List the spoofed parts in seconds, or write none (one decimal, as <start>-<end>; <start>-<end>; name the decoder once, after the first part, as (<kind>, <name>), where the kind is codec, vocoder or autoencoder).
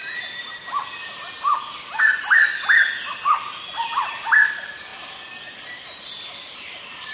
none